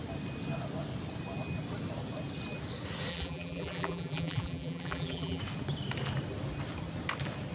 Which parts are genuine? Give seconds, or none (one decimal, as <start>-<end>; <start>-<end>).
0.0-3.1; 5.4-7.5